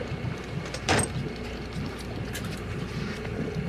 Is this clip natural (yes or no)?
yes